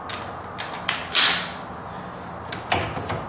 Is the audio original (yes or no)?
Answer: yes